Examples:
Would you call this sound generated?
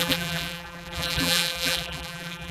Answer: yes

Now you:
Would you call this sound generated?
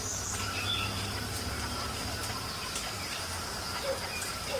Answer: yes